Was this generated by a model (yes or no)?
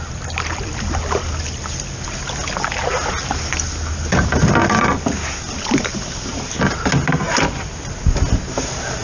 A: no